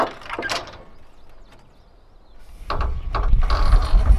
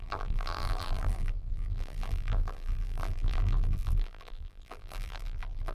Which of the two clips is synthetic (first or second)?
second